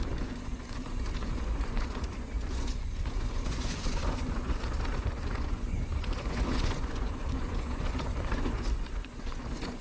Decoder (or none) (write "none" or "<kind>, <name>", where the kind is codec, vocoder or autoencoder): vocoder, Vocos